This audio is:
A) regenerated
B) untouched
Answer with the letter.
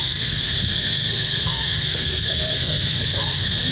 A